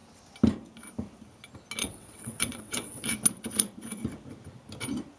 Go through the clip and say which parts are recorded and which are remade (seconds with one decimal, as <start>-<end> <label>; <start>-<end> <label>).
0.0-1.8 recorded; 1.8-3.1 remade; 3.1-5.2 recorded